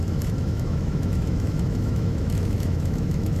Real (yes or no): no